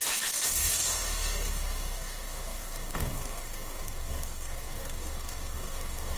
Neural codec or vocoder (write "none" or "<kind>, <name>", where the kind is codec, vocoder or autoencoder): codec, DAC